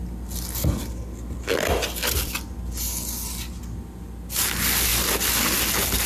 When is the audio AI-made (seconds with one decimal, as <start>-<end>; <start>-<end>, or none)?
none

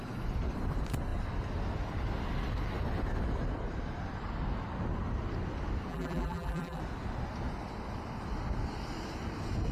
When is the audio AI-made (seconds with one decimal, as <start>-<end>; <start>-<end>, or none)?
5.9-6.8